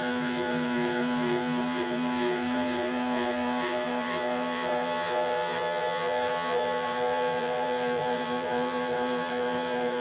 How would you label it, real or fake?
fake